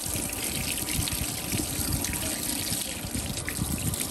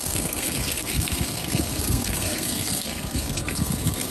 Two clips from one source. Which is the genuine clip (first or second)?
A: first